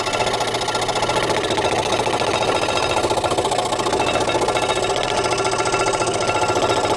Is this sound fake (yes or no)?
no